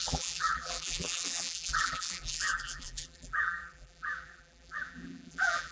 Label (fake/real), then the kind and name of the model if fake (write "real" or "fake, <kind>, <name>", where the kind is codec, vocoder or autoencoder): fake, vocoder, BigVGAN v2